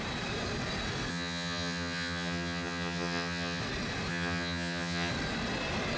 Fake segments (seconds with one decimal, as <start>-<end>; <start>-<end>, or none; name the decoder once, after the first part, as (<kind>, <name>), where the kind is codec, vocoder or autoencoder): 1.1-3.6 (vocoder, HiFi-GAN); 4.1-5.1